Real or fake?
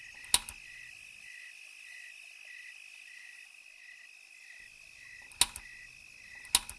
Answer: real